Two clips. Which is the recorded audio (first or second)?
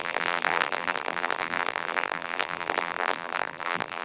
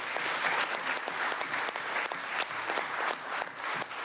second